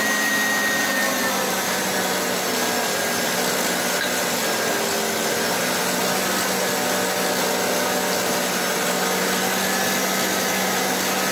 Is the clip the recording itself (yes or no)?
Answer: yes